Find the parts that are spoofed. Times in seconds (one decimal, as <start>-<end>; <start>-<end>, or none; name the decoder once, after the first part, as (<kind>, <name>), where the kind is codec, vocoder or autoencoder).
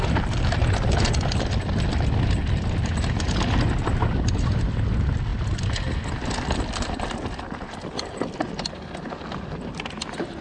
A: none